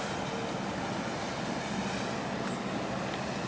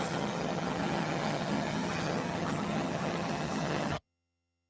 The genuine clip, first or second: first